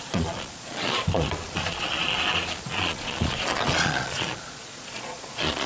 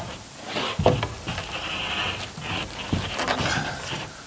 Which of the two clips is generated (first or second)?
first